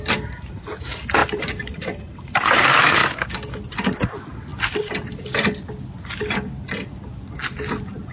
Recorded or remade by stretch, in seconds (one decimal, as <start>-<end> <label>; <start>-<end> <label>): 0.0-3.0 remade; 3.0-3.7 recorded; 3.7-4.5 remade; 4.5-8.1 recorded